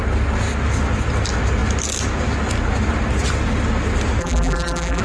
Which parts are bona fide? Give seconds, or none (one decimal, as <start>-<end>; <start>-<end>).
0.0-4.2